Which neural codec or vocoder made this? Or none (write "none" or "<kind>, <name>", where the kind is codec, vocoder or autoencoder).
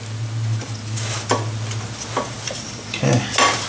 none